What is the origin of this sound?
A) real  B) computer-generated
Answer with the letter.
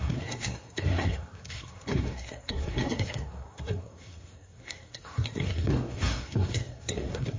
B